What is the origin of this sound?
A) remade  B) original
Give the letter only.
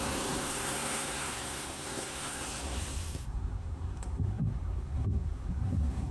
A